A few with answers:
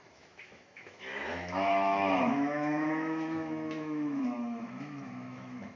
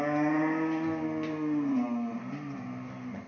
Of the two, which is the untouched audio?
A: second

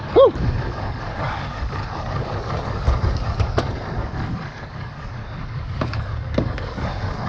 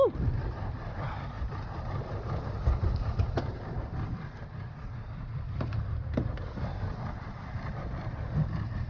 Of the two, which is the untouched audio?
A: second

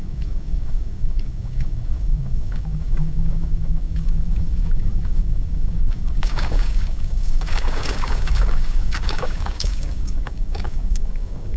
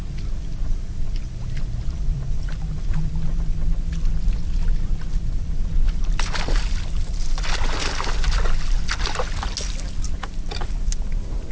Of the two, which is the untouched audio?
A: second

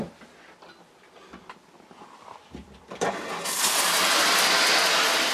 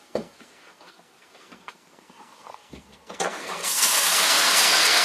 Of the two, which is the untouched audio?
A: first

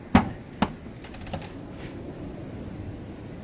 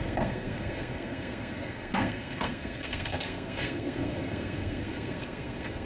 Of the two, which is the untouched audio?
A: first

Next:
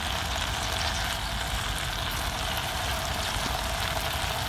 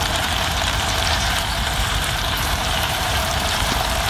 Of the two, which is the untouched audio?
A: first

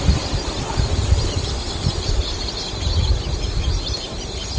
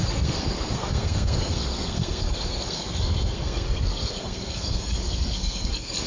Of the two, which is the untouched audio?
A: first